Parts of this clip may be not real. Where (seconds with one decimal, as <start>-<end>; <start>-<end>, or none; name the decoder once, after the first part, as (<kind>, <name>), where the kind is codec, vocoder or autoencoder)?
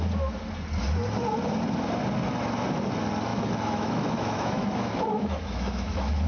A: 3.3-6.3 (autoencoder, DAC-VAE)